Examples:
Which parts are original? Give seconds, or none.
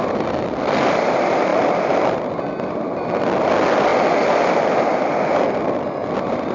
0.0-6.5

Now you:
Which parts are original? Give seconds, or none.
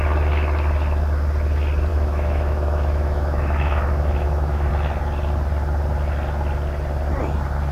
0.0-1.9; 4.7-7.7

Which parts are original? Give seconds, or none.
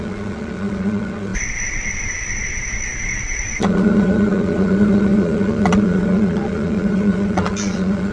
none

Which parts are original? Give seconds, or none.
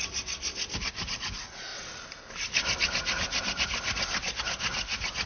0.0-5.3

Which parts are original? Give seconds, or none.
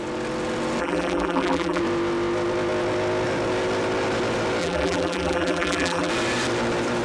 0.0-0.8; 1.8-4.6; 6.1-7.0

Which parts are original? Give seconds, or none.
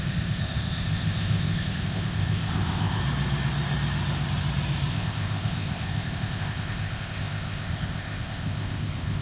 3.0-4.9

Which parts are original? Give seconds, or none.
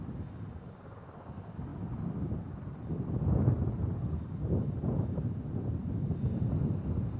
0.0-7.2